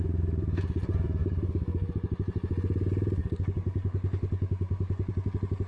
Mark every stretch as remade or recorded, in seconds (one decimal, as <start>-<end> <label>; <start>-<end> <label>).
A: 0.0-1.2 recorded; 1.2-1.9 remade; 1.9-3.2 recorded; 3.2-5.1 remade; 5.1-5.7 recorded